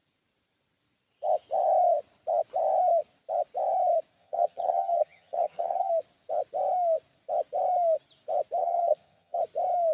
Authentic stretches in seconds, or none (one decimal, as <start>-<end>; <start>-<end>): 0.0-4.2; 5.9-8.6; 9.4-9.9